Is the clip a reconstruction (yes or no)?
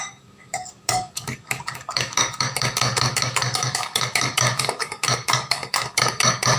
yes